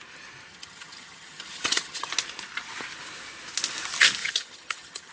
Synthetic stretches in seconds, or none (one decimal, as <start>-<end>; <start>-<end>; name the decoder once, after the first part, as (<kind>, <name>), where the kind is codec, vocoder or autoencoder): 0.5-2.1 (vocoder, HiFi-GAN); 4.2-5.1